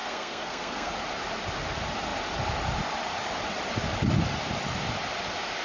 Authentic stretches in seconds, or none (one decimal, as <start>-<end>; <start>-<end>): 0.9-5.6